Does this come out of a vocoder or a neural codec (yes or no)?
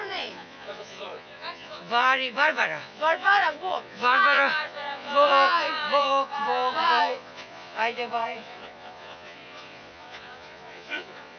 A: yes